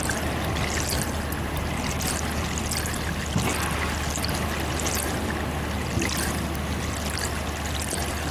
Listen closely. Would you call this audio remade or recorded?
recorded